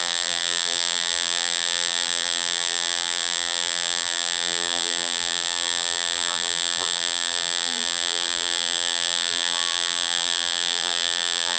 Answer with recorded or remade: remade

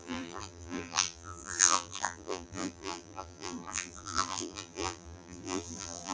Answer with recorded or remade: remade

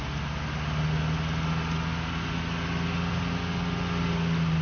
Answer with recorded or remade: recorded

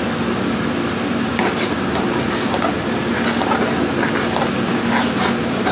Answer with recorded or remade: recorded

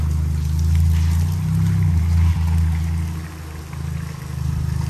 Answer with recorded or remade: recorded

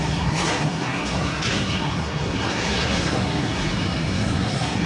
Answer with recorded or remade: remade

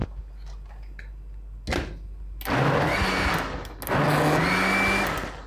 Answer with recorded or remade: recorded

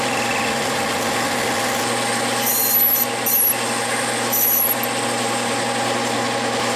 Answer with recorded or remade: recorded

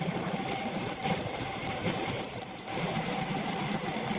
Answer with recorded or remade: remade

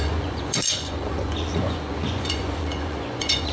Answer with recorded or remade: remade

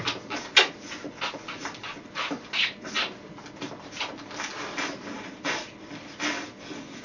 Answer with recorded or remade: recorded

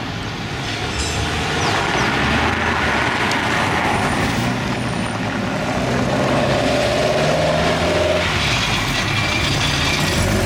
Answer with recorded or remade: recorded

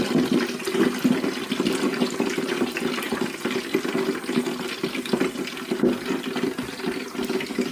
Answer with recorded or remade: recorded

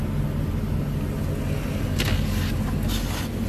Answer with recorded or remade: recorded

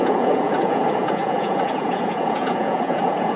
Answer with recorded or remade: remade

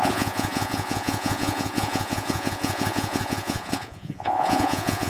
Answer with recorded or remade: remade